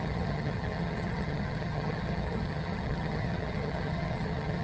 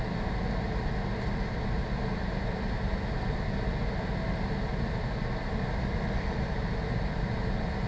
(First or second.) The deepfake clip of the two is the first